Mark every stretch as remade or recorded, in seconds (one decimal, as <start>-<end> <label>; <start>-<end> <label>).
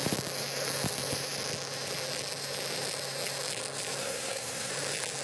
0.0-4.0 recorded; 4.0-4.7 remade; 4.7-5.2 recorded